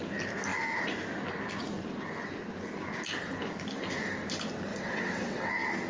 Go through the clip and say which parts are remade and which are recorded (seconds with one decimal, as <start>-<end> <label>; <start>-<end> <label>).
0.0-4.7 recorded; 4.7-5.5 remade; 5.5-5.9 recorded